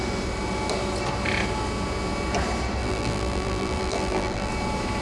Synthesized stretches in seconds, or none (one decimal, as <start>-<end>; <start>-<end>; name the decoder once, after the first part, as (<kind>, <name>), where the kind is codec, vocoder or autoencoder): 2.8-4.5 (vocoder, BigVGAN v2)